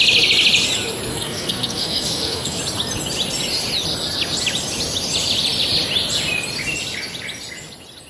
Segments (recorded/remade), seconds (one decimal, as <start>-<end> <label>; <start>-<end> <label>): 0.0-1.1 recorded; 1.1-2.6 remade; 2.6-8.1 recorded